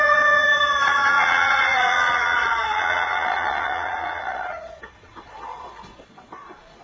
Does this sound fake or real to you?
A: fake